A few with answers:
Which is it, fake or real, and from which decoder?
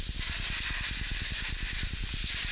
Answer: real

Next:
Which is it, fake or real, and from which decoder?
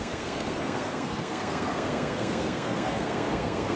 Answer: fake, codec, SNAC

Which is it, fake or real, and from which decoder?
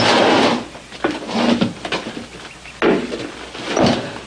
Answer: real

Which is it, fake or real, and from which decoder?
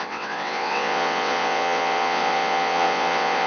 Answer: fake, vocoder, WaveNeXt